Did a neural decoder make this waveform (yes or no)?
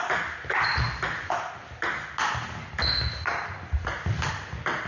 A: no